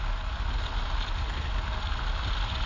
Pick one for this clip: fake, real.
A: real